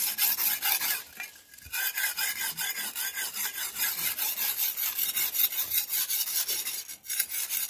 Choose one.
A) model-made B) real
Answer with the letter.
B